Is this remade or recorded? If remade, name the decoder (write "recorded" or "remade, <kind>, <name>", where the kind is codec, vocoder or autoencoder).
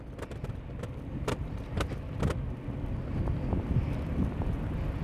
recorded